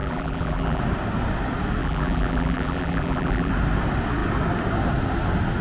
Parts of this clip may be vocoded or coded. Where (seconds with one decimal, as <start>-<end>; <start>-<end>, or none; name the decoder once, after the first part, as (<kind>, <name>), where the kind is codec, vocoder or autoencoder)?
0.0-0.8 (vocoder, BigVGAN v2); 1.8-3.5